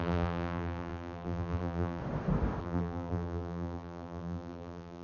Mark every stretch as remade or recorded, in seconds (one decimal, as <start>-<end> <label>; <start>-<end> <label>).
0.0-2.0 remade; 2.0-2.6 recorded; 2.6-5.0 remade